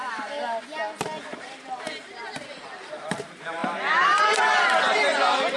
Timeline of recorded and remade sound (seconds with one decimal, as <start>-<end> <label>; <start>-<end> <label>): 0.0-5.6 recorded

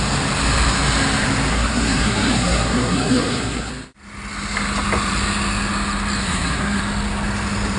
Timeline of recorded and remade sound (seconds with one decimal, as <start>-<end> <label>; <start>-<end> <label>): 0.0-1.5 recorded; 1.5-3.7 remade; 3.7-6.2 recorded; 6.2-6.8 remade; 6.8-7.8 recorded

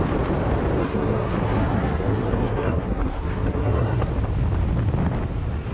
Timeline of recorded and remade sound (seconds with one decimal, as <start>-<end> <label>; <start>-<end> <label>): 0.0-0.8 recorded; 0.8-4.1 remade; 4.1-5.7 recorded

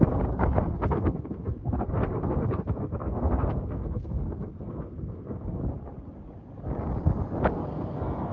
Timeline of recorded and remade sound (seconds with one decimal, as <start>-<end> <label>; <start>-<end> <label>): 0.0-5.6 remade; 5.6-7.5 recorded; 7.5-8.3 remade

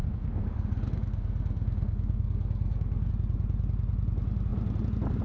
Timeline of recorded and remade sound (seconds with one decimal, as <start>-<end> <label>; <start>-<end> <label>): 0.0-3.1 remade; 3.1-5.2 recorded

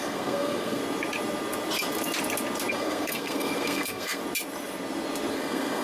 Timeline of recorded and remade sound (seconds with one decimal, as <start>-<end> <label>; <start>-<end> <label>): 0.0-0.8 remade; 0.8-2.7 recorded; 2.7-4.2 remade; 4.2-5.3 recorded; 5.3-5.8 remade

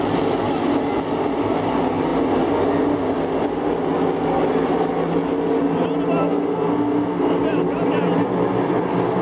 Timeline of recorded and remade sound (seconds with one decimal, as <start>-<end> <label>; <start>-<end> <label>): 0.0-6.2 recorded; 6.2-7.4 remade; 7.4-9.2 recorded

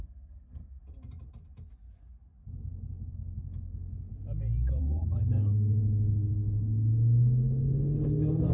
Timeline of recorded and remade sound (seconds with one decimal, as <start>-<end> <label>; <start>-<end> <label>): 0.0-0.8 remade; 0.8-3.1 recorded; 3.1-4.1 remade; 4.1-4.8 recorded; 4.8-8.5 remade